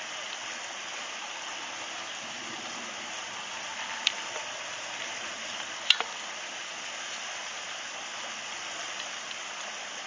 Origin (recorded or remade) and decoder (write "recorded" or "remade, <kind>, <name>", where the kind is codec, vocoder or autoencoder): recorded